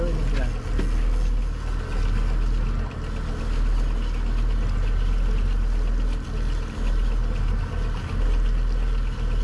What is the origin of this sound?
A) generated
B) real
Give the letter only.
B